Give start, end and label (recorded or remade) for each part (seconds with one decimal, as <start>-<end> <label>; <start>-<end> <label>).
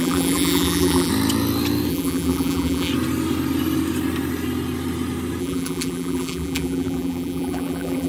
0.0-1.1 remade; 1.1-1.9 recorded; 1.9-2.9 remade; 2.9-5.4 recorded; 5.4-8.1 remade